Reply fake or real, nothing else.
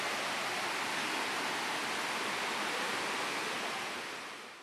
real